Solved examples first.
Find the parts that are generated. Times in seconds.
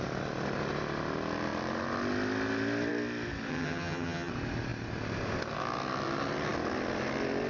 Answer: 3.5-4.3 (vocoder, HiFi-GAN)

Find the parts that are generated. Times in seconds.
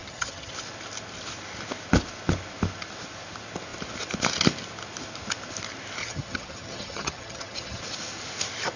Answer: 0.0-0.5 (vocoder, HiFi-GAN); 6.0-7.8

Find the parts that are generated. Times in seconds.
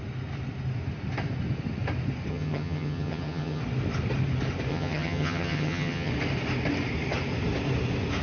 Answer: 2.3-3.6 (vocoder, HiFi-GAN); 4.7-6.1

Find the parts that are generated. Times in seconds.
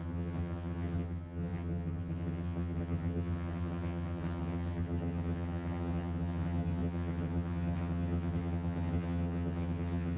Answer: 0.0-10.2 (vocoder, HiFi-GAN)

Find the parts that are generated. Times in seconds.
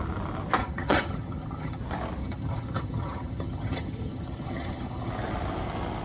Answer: 0.6-1.8 (vocoder, HiFi-GAN); 2.2-5.1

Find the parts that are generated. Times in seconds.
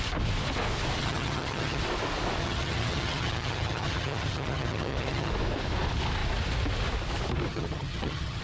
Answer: 1.0-1.8 (vocoder, HiFi-GAN); 2.4-5.3; 7.5-8.4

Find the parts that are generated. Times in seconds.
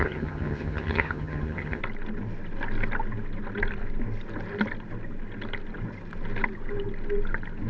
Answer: 0.0-1.8 (vocoder, HiFi-GAN)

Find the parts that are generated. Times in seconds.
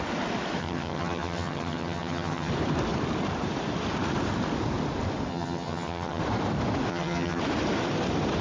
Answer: 0.6-2.5 (vocoder, HiFi-GAN); 5.3-6.2; 6.9-7.4